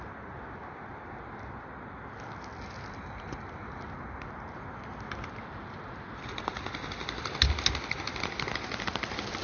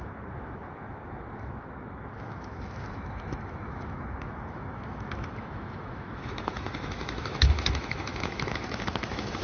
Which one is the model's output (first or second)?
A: second